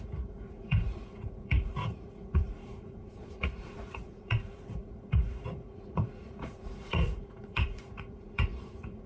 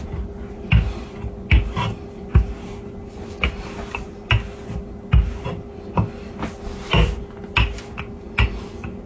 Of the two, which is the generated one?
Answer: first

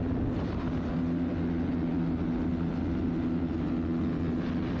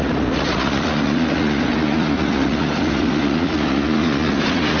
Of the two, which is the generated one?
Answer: second